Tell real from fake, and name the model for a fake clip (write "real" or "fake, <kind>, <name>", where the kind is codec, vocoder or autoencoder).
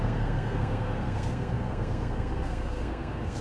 fake, codec, SNAC